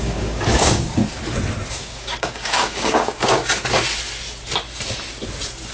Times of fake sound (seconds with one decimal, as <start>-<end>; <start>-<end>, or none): 0.0-1.0; 1.7-3.4